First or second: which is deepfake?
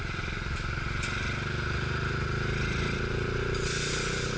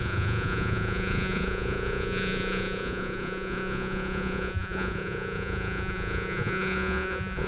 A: second